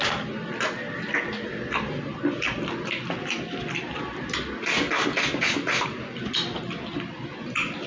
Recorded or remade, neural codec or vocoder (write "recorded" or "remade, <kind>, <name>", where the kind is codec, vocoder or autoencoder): recorded